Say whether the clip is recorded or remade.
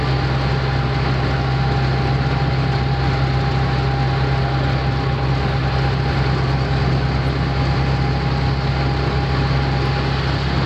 recorded